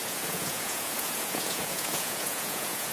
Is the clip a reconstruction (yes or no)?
yes